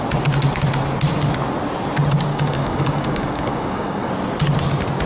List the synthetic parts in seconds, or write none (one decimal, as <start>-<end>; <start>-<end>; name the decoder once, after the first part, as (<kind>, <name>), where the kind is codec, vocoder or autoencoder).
2.3-4.1 (codec, DAC)